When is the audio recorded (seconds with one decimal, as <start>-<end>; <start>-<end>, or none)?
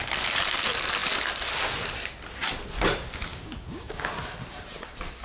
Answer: 0.0-3.3; 4.1-5.2